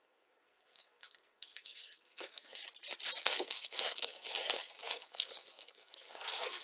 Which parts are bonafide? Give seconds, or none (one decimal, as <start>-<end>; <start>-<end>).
2.6-3.2